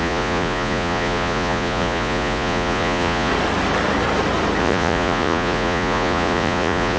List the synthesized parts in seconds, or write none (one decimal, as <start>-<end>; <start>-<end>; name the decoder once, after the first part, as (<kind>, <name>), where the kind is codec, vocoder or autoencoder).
0.0-3.3 (vocoder, Vocos); 4.6-7.0

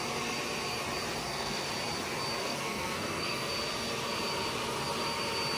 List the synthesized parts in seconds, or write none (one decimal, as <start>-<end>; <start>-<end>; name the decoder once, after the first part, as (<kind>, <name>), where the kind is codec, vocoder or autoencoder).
1.2-1.7 (codec, SNAC); 2.4-3.5

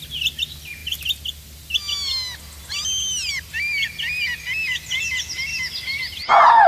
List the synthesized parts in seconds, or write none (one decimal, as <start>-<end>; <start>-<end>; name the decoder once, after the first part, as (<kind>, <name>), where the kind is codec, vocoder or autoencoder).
none